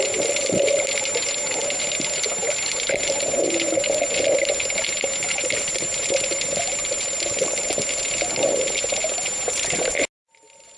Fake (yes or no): no